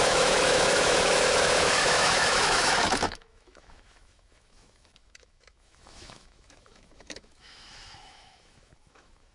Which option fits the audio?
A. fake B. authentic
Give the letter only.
A